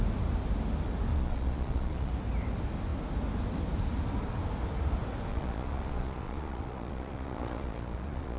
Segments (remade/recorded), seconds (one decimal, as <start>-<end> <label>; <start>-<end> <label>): 0.0-1.1 recorded; 1.1-2.1 remade; 2.1-5.3 recorded; 5.3-8.4 remade